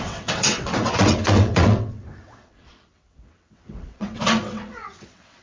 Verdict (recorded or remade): remade